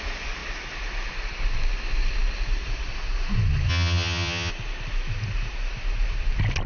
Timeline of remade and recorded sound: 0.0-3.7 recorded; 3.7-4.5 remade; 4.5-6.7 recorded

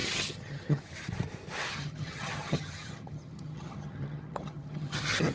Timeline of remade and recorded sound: 0.0-0.8 remade; 0.8-1.7 recorded; 1.7-5.3 remade

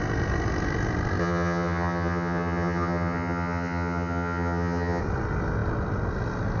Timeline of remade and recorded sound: 0.0-1.2 recorded; 1.2-5.0 remade; 5.0-6.6 recorded

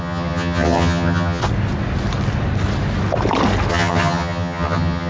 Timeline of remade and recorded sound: 0.0-1.4 remade; 1.4-3.7 recorded; 3.7-5.1 remade

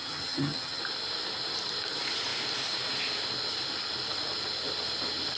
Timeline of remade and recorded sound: 0.0-0.8 remade; 0.8-5.4 recorded

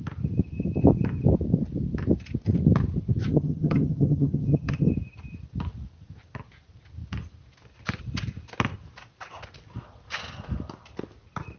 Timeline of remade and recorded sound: 0.0-3.3 recorded; 3.3-4.9 remade; 4.9-11.6 recorded